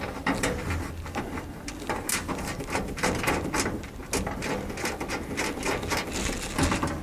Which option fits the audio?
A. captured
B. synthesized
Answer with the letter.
A